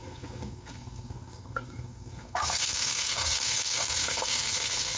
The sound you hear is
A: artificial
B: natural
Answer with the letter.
A